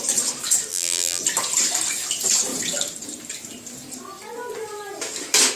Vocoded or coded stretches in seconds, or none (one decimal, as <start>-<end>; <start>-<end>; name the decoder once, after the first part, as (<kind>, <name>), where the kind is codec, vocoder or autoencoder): 0.7-1.2 (vocoder, BigVGAN v2)